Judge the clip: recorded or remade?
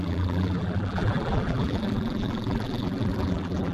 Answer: remade